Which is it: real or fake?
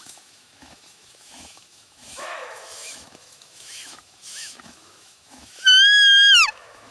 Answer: fake